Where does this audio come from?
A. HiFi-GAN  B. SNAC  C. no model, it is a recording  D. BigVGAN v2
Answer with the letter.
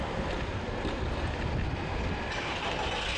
C